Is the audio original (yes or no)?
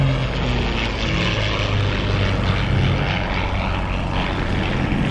yes